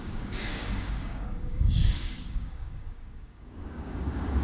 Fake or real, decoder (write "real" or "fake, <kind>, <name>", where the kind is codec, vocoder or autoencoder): fake, codec, DAC